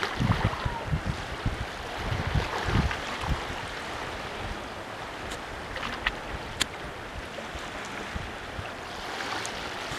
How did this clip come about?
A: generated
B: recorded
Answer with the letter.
B